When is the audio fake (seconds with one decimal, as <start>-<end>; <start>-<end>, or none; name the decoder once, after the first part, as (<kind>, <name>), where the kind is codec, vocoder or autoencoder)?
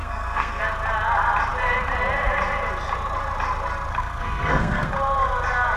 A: 0.0-0.6 (codec, SNAC); 3.9-4.9